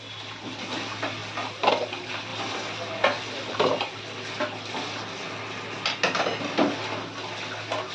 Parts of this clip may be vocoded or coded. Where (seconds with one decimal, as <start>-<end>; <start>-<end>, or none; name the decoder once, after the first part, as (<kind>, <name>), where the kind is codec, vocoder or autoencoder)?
none